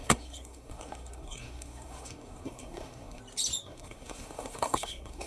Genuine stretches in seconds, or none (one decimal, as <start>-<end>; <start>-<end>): 3.2-3.6